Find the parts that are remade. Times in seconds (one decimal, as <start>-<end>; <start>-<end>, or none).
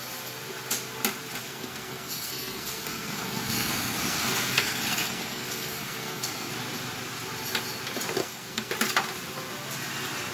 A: 1.4-6.5; 8.2-8.7